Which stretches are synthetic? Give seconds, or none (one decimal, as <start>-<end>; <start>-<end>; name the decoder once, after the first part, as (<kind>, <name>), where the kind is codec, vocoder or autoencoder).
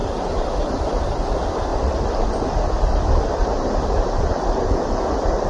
none